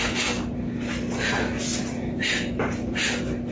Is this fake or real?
real